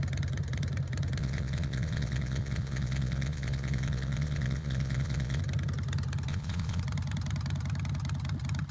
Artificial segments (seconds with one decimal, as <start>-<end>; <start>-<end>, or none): 1.2-5.4; 6.3-6.8